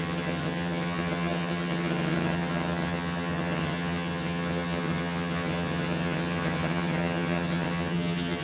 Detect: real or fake fake